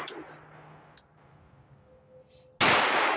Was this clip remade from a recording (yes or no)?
no